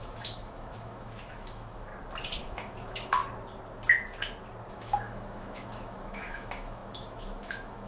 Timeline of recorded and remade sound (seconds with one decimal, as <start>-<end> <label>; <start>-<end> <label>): 0.0-1.9 remade; 1.9-2.4 recorded; 2.4-3.2 remade; 3.2-4.7 recorded; 4.7-7.9 remade